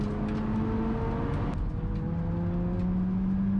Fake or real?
real